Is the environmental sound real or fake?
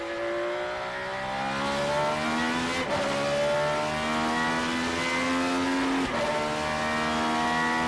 real